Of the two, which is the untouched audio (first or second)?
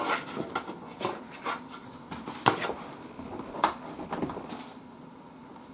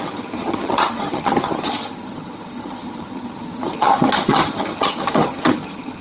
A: first